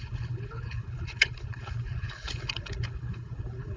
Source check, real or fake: fake